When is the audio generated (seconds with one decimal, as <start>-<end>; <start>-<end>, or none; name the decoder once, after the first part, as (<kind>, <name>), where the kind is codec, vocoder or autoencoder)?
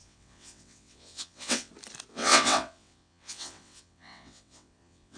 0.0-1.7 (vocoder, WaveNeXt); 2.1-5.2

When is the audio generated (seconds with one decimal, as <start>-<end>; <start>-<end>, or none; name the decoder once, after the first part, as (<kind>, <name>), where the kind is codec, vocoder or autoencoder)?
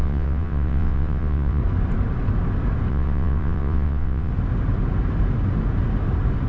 0.0-1.6 (vocoder, WaveNeXt); 2.9-4.3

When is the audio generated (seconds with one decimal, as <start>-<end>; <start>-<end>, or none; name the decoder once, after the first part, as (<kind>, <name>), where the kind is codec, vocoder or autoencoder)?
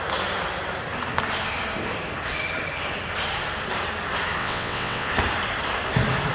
4.4-5.1 (vocoder, WaveNeXt)